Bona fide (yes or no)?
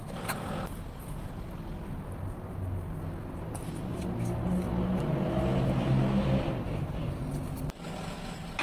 yes